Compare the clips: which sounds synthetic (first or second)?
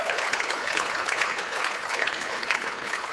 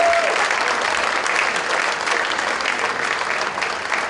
first